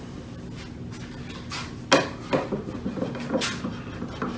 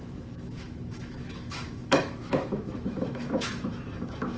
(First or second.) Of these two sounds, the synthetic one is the second